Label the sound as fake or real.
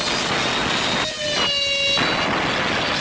real